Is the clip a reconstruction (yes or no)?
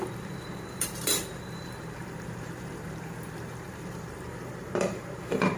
yes